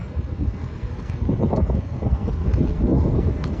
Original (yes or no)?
no